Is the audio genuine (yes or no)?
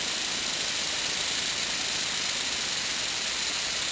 yes